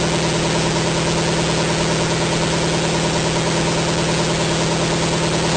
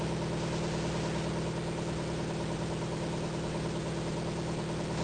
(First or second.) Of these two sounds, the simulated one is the first